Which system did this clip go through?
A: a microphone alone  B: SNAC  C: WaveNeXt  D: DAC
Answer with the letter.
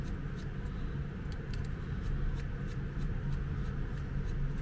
A